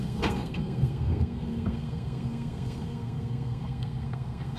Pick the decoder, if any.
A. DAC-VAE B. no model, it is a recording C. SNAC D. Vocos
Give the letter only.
C